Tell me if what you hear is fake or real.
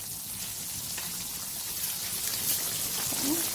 real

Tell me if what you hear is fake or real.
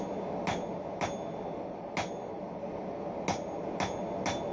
real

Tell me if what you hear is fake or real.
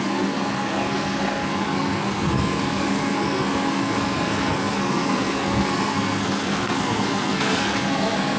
fake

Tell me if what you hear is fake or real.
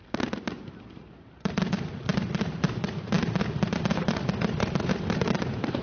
fake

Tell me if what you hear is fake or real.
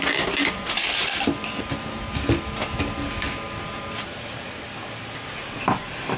real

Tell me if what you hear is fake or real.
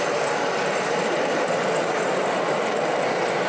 real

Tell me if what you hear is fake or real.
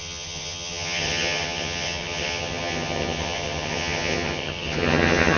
fake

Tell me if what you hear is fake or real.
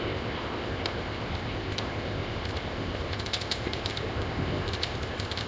fake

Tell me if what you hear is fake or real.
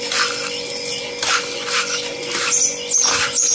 real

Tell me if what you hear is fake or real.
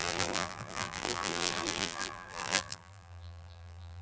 fake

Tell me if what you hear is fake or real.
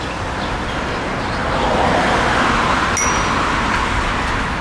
real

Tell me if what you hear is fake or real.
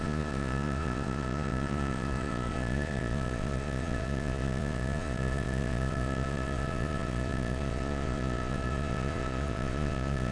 fake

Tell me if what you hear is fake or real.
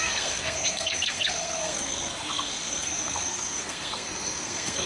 fake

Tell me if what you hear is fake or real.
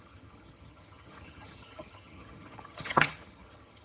fake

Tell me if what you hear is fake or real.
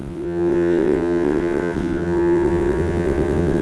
fake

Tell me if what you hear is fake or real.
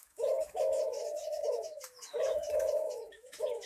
fake